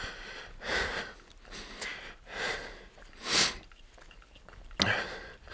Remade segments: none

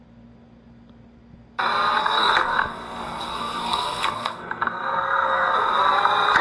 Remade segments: 2.0-5.8 (codec, SNAC)

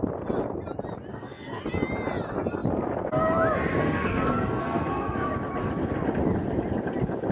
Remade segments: 1.1-1.6 (codec, SNAC); 3.8-5.3

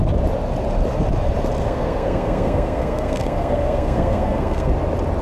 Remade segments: 1.6-4.7 (codec, SNAC)

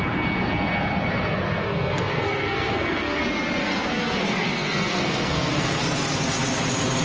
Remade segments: 1.6-3.2 (codec, SNAC); 3.6-5.8